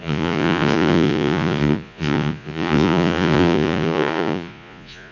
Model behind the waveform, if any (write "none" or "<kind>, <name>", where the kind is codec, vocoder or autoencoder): vocoder, Vocos